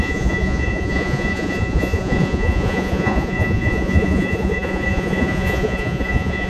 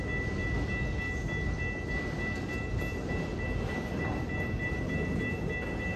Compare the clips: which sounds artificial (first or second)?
first